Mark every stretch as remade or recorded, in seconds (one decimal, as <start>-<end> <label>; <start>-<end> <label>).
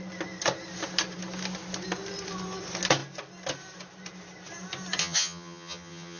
0.0-5.0 recorded; 5.0-6.2 remade